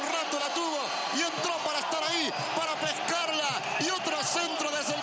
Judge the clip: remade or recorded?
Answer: recorded